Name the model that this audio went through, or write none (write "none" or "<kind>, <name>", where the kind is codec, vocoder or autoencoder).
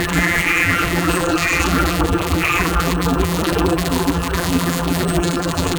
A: vocoder, BigVGAN v2